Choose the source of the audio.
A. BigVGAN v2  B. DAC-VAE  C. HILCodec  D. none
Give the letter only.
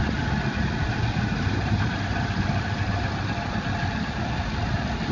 D